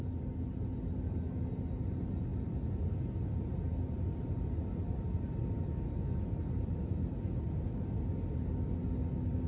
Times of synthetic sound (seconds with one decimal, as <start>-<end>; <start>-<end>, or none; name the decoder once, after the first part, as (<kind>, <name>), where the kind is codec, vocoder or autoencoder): none